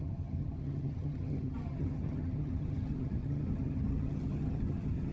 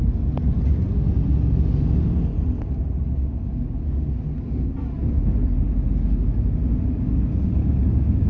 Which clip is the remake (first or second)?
first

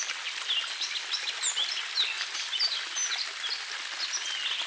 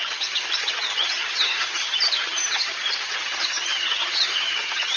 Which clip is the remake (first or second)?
second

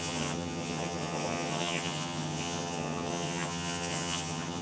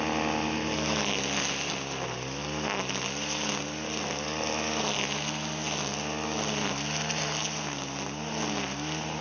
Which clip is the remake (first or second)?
first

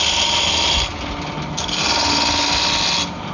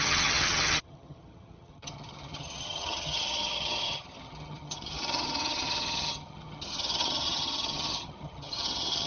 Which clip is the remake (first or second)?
second